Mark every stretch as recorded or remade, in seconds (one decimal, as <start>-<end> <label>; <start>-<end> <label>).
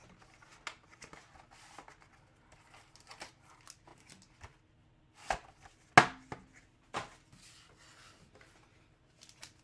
0.0-9.6 recorded